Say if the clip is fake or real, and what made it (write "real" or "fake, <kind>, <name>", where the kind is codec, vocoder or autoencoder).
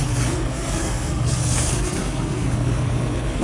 fake, codec, SNAC